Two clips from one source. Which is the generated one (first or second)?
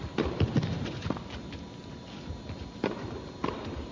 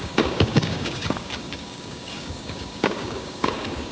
second